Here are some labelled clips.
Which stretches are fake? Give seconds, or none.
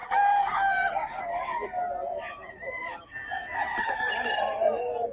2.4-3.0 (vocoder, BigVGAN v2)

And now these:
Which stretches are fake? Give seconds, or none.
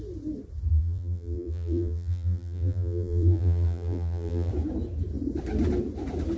0.7-4.5 (vocoder, BigVGAN v2)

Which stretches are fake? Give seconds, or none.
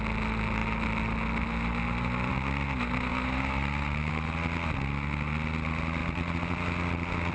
3.1-4.1 (vocoder, BigVGAN v2)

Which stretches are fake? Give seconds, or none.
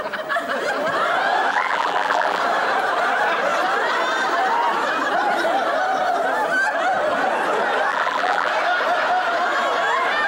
1.5-2.4 (vocoder, BigVGAN v2); 7.9-8.5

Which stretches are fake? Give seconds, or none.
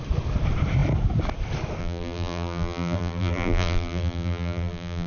1.8-5.1 (vocoder, BigVGAN v2)